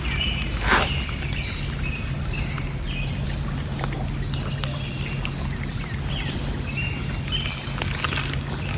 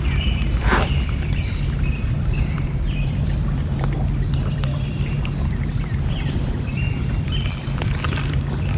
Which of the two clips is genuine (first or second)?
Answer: first